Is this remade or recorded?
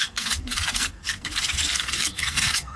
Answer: remade